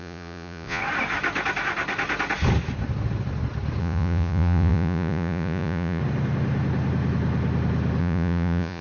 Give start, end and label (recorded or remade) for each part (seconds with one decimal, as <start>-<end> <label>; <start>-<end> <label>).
0.0-0.8 remade; 0.8-3.8 recorded; 3.8-6.0 remade; 6.0-8.0 recorded; 8.0-8.8 remade